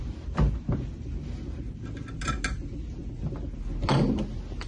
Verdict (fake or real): real